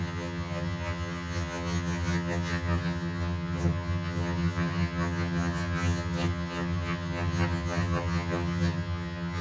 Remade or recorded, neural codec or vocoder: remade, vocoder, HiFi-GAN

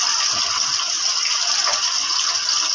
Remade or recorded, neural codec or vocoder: recorded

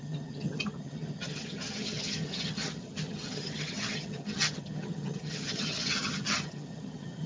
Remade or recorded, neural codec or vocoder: remade, vocoder, HiFi-GAN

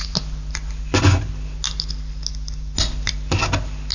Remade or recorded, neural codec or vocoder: recorded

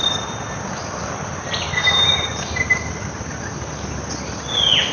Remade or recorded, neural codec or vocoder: recorded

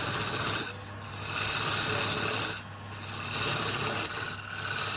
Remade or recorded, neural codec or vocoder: recorded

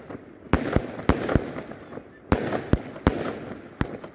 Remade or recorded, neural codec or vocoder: recorded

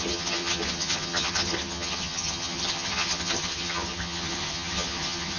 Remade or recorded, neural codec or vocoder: remade, vocoder, HiFi-GAN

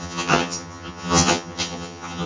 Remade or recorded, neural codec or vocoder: remade, vocoder, HiFi-GAN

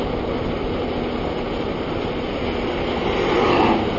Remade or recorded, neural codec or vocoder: recorded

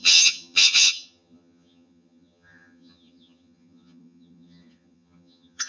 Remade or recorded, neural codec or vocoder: remade, vocoder, HiFi-GAN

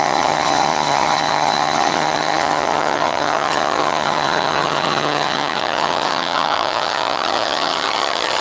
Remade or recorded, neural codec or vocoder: remade, vocoder, HiFi-GAN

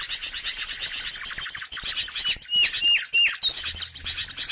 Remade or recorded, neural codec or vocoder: recorded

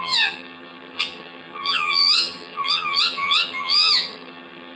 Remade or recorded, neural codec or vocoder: remade, vocoder, HiFi-GAN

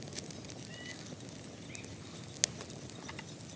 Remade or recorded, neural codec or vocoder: recorded